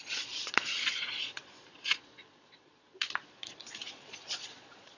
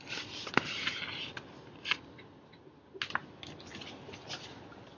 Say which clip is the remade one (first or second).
first